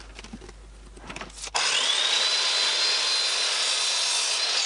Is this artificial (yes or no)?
no